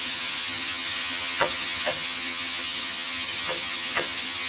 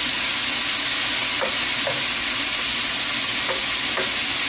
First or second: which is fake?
first